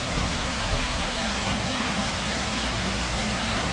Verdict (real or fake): fake